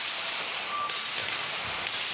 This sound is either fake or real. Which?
real